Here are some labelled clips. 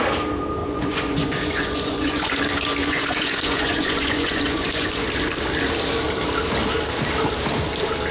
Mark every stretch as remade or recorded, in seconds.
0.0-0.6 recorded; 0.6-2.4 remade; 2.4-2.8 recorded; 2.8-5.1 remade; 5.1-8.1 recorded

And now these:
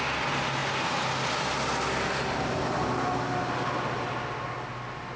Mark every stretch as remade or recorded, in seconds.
0.0-5.2 recorded